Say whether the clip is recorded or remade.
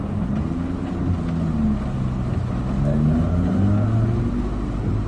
recorded